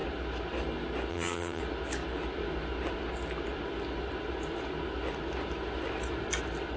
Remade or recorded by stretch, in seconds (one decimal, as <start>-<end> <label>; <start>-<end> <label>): 0.0-1.1 recorded; 1.1-1.6 remade; 1.6-6.8 recorded